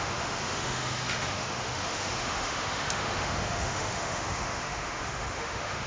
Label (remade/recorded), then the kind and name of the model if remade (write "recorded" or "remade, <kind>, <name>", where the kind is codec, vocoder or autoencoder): remade, autoencoder, DAC-VAE